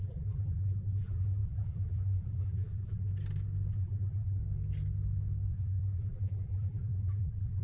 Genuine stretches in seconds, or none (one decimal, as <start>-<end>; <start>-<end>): 3.1-3.7; 4.4-5.5